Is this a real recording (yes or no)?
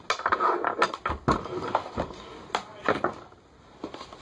yes